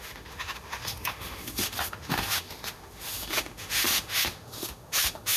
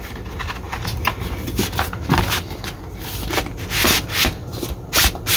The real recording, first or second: second